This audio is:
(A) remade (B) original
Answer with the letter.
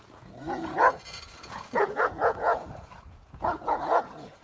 A